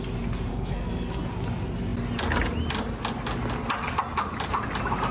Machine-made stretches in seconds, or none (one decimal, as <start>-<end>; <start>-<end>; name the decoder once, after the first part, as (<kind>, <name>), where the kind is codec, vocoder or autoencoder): 0.5-1.3 (codec, SNAC)